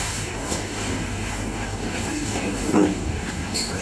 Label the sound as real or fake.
fake